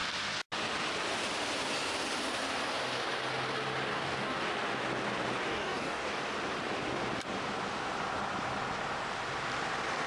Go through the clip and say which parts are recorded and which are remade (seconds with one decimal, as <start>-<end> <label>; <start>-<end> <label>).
0.0-3.9 recorded; 3.9-4.5 remade; 4.5-5.5 recorded; 5.5-6.2 remade; 6.2-10.1 recorded